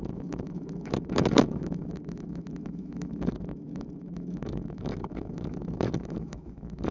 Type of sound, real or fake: fake